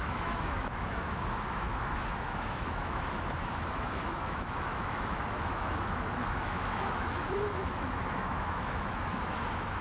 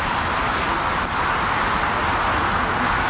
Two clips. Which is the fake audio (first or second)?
first